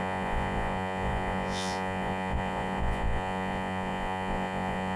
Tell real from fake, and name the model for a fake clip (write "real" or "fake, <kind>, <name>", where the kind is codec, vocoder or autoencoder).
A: fake, vocoder, Vocos